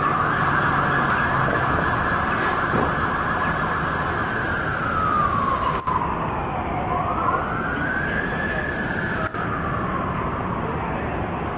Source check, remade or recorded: recorded